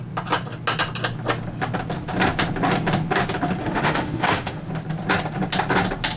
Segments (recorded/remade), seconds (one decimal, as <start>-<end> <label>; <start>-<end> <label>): 0.0-3.6 recorded; 3.6-4.7 remade; 4.7-6.2 recorded